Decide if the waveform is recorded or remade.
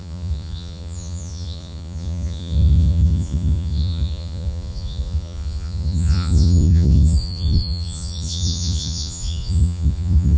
remade